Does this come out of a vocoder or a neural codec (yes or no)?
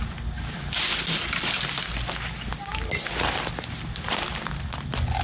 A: no